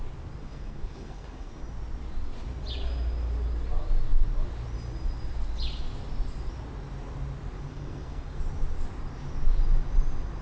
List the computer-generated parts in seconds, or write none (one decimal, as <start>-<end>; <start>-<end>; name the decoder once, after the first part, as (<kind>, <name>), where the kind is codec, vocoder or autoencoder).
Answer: 0.4-1.6 (codec, SNAC); 7.7-8.4

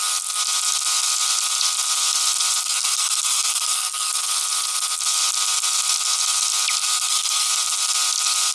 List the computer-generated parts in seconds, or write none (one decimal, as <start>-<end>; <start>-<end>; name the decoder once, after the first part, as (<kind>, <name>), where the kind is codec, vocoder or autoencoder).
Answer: 2.6-4.1 (codec, SNAC); 6.8-7.5